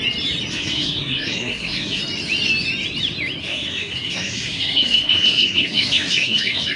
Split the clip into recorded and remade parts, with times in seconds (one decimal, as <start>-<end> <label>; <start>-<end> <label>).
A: 0.0-0.5 recorded; 0.5-2.0 remade; 2.0-3.4 recorded; 3.4-6.8 remade